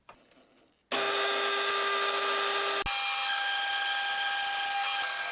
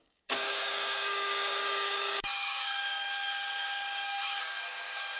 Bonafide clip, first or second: first